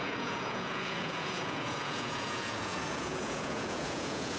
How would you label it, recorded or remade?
remade